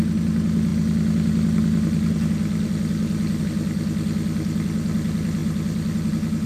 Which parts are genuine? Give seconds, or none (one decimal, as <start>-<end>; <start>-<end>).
0.0-5.4; 6.1-6.5